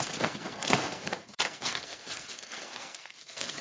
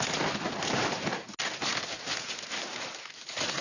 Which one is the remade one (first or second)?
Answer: first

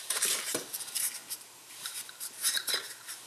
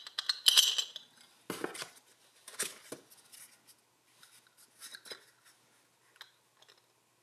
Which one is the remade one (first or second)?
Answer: first